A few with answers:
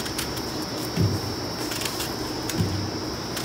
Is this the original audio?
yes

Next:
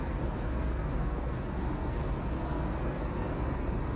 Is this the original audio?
no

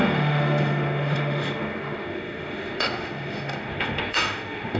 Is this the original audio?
no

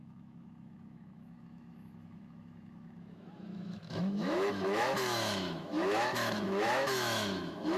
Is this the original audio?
no